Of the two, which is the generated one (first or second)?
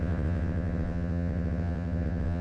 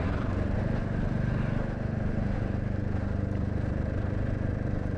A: first